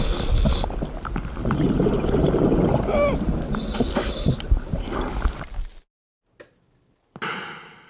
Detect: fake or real real